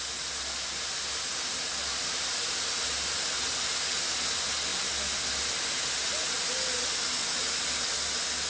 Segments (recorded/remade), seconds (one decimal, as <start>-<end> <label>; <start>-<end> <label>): 0.0-8.5 recorded